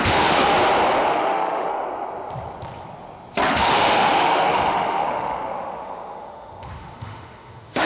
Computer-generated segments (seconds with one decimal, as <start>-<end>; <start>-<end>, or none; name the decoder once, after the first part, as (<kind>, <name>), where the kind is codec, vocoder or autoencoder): 0.0-0.5 (autoencoder, DAC-VAE); 1.1-1.7; 3.5-7.9